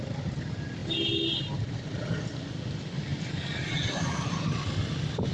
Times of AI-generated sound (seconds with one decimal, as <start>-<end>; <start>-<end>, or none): none